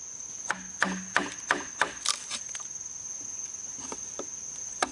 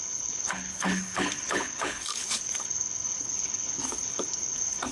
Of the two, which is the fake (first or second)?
second